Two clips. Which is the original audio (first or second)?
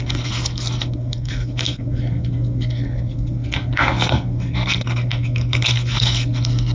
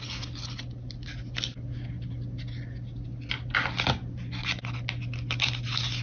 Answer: second